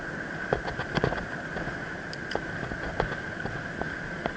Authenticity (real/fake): real